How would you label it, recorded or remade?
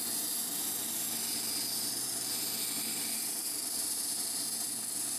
recorded